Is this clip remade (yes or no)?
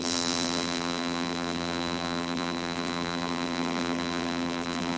yes